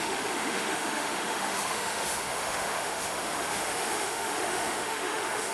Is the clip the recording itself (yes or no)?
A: no